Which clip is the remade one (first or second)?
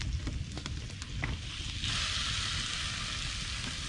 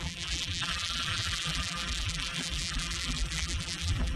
second